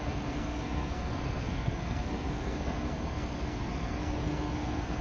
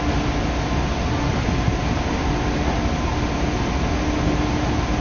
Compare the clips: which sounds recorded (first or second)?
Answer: second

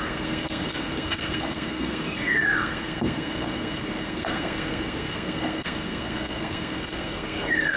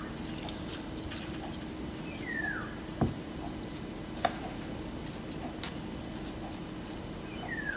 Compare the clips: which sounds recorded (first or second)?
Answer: second